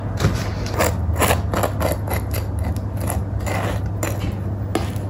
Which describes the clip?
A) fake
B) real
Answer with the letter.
B